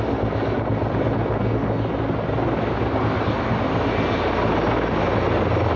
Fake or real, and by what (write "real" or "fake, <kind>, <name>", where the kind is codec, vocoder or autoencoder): real